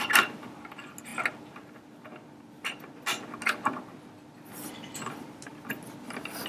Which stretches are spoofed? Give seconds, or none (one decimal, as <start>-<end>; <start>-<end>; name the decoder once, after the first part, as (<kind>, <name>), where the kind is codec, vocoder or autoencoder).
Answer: none

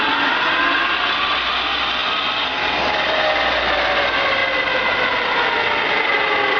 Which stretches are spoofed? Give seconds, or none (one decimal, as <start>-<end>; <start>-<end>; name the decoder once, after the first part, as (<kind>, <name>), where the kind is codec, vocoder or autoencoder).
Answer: 0.0-4.4 (vocoder, BigVGAN v2); 5.7-6.6

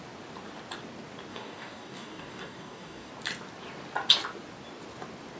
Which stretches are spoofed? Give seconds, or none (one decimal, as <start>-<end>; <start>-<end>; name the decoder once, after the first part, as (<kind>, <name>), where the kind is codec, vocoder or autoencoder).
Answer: 1.3-3.1 (codec, DAC)

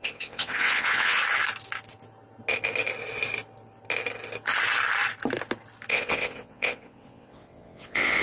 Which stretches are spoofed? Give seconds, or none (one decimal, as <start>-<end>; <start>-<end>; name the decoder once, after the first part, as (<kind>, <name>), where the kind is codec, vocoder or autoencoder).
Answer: 0.0-1.2 (vocoder, WaveNeXt); 5.9-8.2

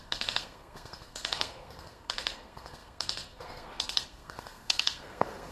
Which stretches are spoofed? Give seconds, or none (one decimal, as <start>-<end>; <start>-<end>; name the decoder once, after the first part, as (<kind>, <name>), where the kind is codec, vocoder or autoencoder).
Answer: 0.0-5.5 (codec, SNAC)

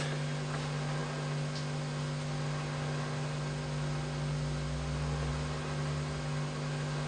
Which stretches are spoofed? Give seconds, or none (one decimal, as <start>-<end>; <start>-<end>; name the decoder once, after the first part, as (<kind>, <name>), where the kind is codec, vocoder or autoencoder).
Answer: none